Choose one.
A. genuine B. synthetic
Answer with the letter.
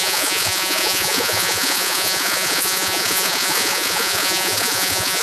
B